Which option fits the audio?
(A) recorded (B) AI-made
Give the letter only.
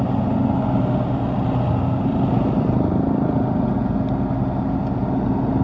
A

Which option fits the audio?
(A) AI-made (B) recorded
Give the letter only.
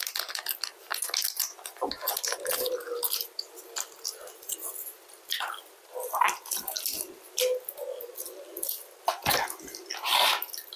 B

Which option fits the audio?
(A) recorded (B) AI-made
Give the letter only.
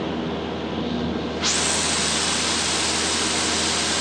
A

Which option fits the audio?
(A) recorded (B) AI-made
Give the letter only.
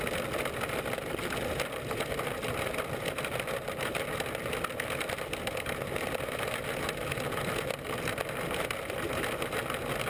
A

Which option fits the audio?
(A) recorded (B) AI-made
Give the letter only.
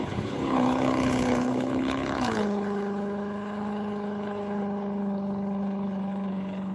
B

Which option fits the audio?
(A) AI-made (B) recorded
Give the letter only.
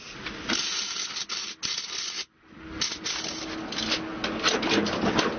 B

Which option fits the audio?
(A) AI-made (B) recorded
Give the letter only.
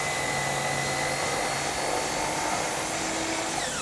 B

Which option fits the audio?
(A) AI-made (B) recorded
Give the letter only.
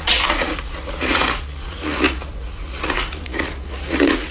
A